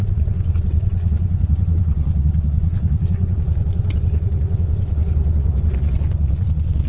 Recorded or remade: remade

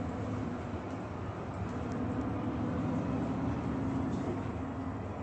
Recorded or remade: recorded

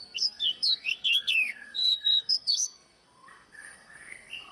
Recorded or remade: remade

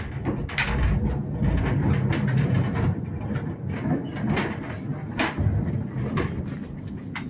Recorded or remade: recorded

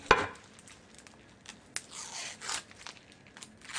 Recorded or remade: recorded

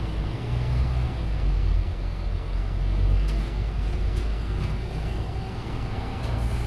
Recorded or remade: remade